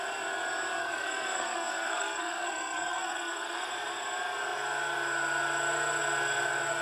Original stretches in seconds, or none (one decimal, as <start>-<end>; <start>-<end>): 0.0-0.8; 3.7-6.8